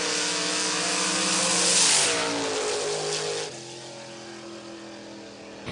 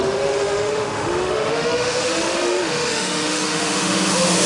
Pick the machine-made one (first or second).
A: second